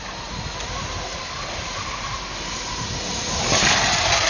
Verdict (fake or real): real